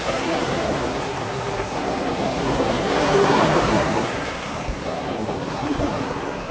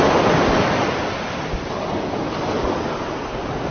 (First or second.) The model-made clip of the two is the first